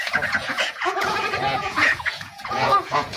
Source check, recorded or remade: remade